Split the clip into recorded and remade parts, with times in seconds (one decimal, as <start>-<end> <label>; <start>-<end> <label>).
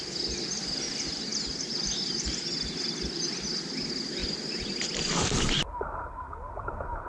0.0-1.3 recorded; 1.3-2.4 remade; 2.4-7.1 recorded